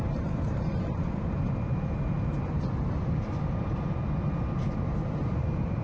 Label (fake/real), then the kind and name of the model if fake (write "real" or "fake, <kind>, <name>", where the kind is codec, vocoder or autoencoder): fake, vocoder, BigVGAN v2